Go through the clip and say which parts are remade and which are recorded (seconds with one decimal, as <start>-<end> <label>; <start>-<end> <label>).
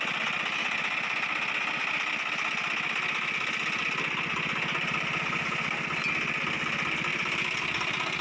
0.0-8.2 recorded